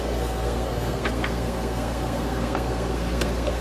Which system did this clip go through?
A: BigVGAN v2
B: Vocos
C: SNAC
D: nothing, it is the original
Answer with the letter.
C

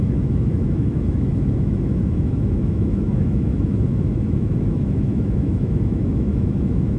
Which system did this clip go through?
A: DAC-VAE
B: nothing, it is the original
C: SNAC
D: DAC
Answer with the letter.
A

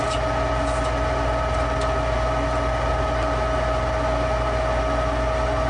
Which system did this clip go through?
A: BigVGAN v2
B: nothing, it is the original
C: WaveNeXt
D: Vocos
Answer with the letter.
B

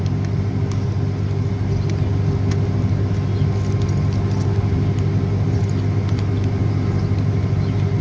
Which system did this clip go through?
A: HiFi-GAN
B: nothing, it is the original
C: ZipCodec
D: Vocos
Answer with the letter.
B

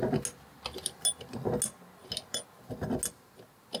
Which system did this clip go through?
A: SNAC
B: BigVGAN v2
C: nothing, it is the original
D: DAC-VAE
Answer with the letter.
C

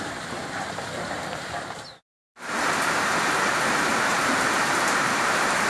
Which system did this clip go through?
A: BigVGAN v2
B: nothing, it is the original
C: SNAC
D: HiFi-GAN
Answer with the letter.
A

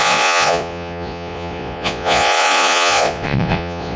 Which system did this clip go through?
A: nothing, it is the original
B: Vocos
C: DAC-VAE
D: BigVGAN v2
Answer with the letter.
B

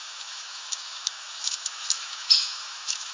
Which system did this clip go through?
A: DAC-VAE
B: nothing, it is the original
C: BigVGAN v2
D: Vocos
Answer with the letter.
A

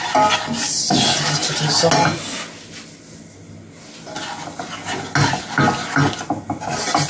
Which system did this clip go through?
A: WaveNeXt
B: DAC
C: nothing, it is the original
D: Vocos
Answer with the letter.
C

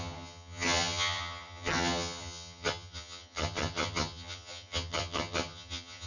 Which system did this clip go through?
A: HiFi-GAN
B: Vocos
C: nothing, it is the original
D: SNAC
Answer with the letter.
A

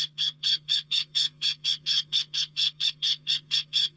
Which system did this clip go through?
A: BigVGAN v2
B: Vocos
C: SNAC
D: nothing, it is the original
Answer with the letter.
C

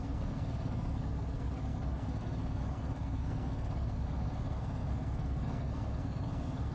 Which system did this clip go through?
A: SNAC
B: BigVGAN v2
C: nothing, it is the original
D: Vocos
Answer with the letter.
A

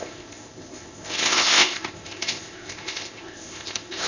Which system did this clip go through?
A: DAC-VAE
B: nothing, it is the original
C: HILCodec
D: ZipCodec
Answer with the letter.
D